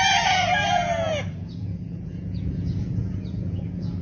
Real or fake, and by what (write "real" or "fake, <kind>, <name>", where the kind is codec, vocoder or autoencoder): fake, vocoder, Vocos